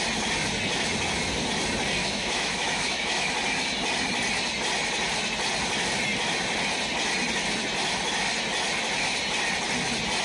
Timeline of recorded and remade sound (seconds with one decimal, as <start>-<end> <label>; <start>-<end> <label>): 0.0-2.0 recorded; 2.0-3.3 remade; 3.3-10.2 recorded